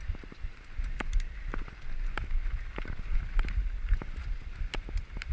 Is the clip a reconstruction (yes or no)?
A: no